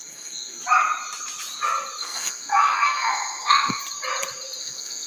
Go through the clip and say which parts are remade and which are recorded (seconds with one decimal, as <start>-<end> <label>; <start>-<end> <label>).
0.0-0.6 remade; 0.6-2.0 recorded; 2.0-3.8 remade; 3.8-4.6 recorded; 4.6-5.1 remade

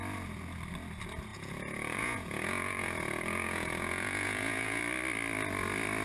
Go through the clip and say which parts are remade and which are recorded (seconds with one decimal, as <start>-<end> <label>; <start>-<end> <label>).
0.0-1.3 recorded; 1.3-4.8 remade; 4.8-6.0 recorded

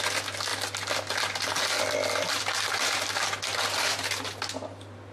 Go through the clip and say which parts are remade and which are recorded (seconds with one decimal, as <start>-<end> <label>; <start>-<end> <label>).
0.0-5.1 recorded

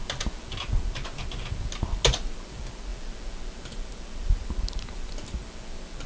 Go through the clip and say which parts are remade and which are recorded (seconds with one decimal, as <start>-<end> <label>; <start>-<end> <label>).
0.0-6.1 recorded

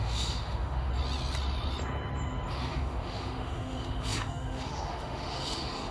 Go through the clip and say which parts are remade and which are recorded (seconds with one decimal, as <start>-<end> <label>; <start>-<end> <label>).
0.0-0.9 remade; 0.9-2.5 recorded; 2.5-5.9 remade